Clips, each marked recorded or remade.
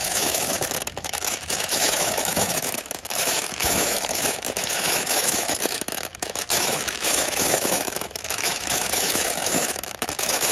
remade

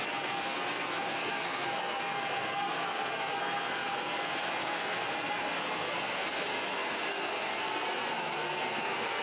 remade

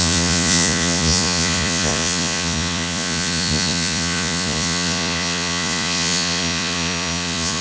remade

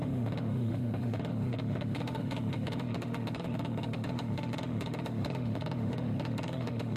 remade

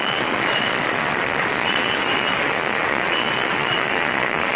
remade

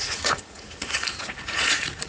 remade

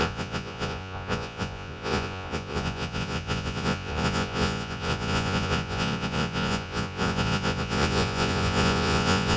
remade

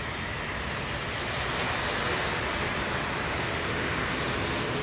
recorded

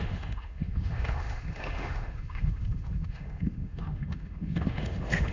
remade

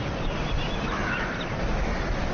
recorded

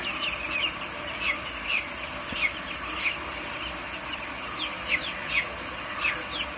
recorded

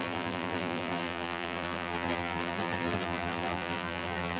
remade